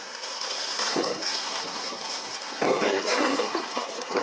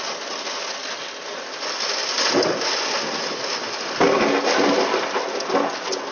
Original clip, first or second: second